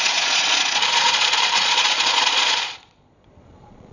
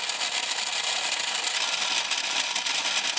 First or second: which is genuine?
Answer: second